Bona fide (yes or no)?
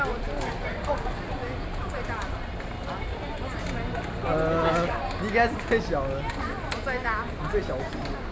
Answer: yes